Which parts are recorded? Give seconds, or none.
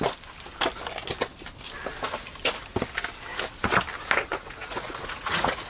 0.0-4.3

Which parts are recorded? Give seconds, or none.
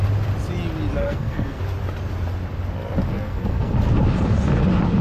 0.0-1.0; 1.6-3.1; 3.7-5.0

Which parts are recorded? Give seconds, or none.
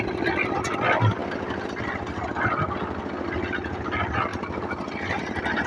0.0-4.3; 5.2-5.7